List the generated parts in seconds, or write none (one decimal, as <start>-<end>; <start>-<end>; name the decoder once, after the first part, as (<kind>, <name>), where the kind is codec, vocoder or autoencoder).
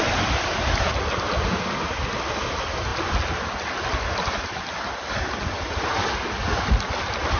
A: none